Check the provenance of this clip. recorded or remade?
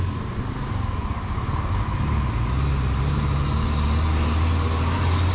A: recorded